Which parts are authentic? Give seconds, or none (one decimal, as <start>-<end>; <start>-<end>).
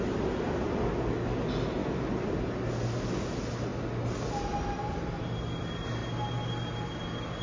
0.0-7.4